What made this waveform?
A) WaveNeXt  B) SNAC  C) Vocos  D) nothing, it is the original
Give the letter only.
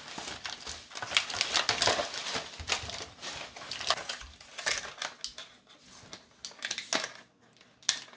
D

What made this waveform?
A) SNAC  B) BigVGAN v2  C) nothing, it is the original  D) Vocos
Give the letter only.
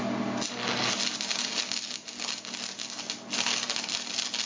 C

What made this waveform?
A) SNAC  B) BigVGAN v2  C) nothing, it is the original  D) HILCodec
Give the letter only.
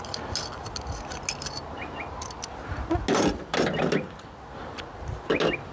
C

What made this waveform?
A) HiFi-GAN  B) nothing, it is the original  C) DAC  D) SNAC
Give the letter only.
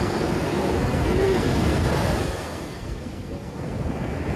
D